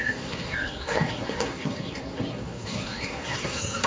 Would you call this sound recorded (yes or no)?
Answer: no